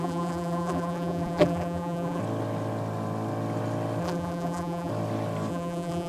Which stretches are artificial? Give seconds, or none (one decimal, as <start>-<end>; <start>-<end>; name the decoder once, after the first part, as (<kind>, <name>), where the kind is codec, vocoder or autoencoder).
0.0-2.2 (vocoder, BigVGAN v2); 4.0-4.9; 5.5-6.1